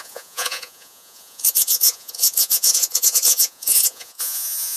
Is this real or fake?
fake